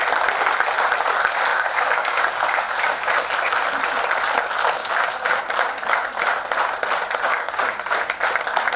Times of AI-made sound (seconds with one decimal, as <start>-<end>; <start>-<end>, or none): 1.5-3.2; 4.8-5.4; 7.3-7.8